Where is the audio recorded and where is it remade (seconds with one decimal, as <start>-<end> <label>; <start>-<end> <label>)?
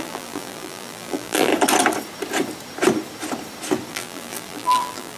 0.0-1.5 remade; 1.5-3.9 recorded; 3.9-5.2 remade